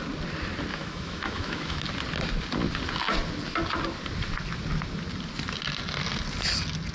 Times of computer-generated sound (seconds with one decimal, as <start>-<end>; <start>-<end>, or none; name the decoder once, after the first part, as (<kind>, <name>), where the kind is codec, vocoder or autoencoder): 0.7-1.8 (autoencoder, DAC-VAE)